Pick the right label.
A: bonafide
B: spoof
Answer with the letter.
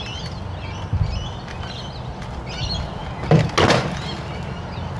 A